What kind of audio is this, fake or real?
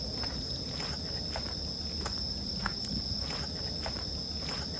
real